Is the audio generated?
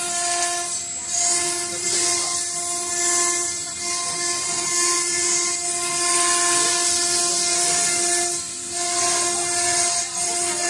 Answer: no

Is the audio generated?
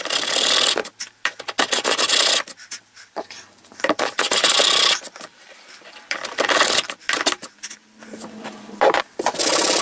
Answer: yes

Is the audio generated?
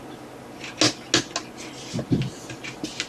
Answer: no